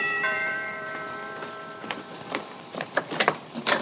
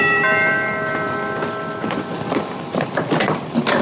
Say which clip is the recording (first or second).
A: second